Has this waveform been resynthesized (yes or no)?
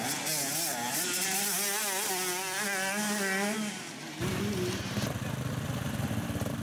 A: no